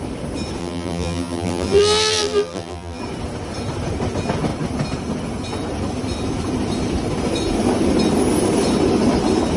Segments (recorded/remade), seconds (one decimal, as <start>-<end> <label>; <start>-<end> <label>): 0.0-0.6 recorded; 0.6-3.0 remade; 3.0-9.6 recorded